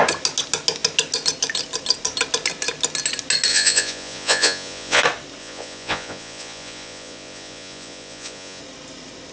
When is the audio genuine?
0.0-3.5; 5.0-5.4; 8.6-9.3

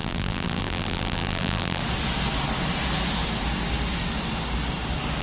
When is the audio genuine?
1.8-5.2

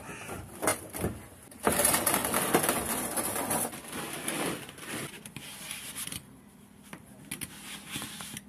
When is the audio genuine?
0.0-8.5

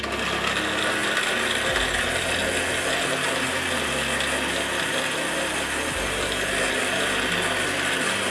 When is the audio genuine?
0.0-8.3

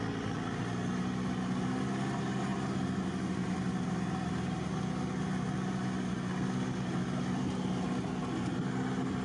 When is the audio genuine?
0.0-9.2

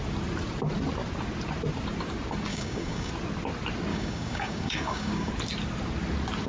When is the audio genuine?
0.0-2.5; 3.1-3.9; 5.3-6.5

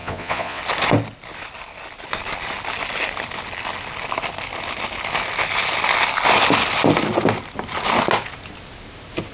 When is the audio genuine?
0.6-9.3

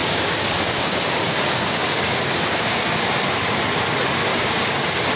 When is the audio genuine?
3.1-4.3